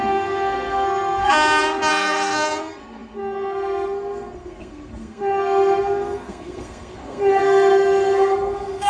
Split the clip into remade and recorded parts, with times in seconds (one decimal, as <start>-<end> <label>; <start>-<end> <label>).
0.0-1.2 remade; 1.2-1.9 recorded; 1.9-8.9 remade